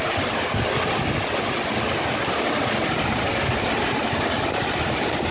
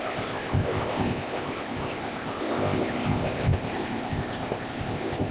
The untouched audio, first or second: first